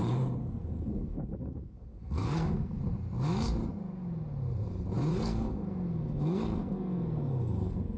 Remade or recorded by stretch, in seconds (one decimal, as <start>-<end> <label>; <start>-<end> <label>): 0.0-0.4 recorded; 0.4-2.8 remade; 2.8-5.1 recorded; 5.1-8.0 remade